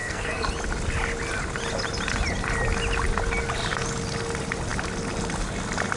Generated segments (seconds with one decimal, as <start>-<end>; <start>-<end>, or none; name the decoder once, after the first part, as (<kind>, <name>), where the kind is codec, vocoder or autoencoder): 0.0-0.5 (codec, SNAC)